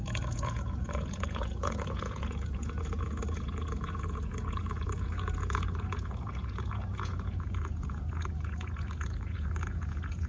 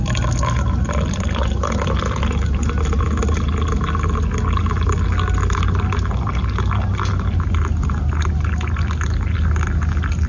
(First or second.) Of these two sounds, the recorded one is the second